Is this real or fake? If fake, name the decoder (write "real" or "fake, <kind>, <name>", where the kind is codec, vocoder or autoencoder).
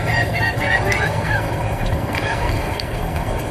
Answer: fake, codec, SNAC